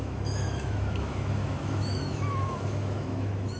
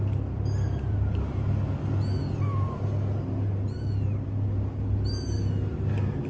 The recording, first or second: second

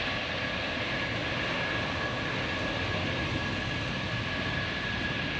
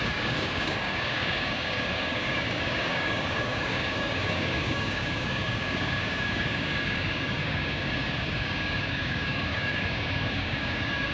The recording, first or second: first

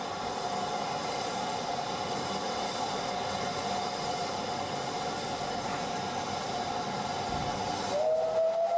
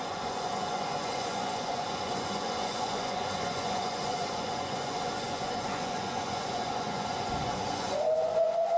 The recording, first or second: first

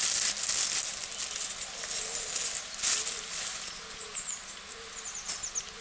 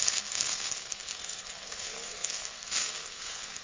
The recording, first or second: first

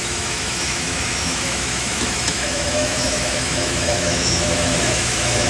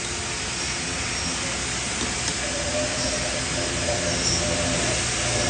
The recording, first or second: second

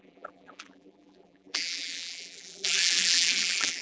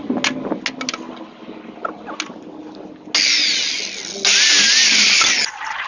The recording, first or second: second